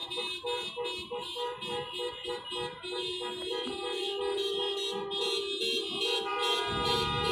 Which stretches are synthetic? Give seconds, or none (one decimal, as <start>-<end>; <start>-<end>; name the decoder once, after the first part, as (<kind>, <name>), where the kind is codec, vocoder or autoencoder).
none